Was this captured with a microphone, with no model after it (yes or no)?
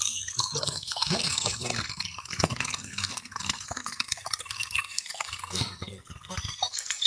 no